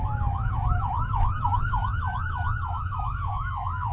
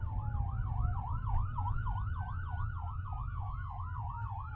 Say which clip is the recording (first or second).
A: second